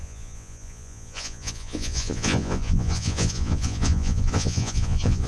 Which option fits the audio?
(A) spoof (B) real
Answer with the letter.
A